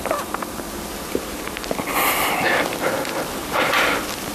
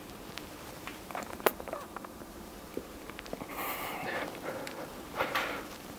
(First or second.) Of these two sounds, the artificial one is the second